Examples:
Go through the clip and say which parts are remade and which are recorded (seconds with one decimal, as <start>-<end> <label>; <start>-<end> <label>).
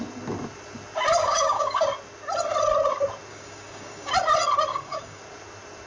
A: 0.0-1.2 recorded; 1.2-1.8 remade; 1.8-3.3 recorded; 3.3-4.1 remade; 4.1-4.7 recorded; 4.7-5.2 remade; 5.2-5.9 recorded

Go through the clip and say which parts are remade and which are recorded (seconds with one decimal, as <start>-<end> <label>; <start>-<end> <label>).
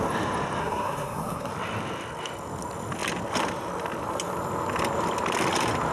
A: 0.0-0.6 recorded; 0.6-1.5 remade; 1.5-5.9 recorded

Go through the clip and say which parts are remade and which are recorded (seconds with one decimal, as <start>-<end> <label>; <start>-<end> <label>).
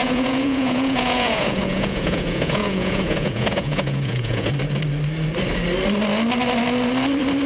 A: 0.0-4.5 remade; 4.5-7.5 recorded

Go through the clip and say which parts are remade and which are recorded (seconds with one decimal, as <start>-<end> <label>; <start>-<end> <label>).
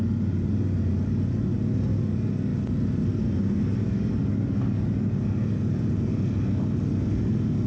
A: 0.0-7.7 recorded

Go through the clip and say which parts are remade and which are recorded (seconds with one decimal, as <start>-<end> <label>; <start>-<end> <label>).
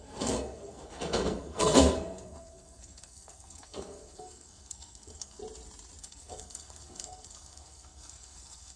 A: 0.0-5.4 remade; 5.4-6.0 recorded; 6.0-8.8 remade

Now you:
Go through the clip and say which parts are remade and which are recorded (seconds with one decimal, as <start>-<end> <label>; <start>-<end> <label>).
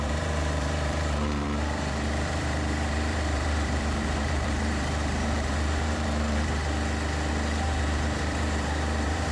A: 0.0-6.6 remade; 6.6-7.3 recorded; 7.3-9.3 remade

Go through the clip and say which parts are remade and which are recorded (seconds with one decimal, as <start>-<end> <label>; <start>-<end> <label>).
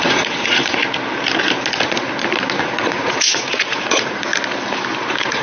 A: 0.0-0.8 remade; 0.8-2.6 recorded; 2.6-4.3 remade; 4.3-5.0 recorded; 5.0-5.4 remade